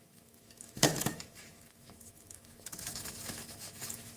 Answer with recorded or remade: remade